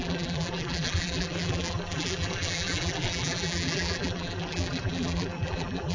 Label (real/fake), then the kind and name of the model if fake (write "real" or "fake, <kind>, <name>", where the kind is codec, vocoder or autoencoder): fake, vocoder, BigVGAN v2